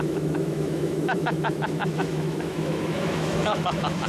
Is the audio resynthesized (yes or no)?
yes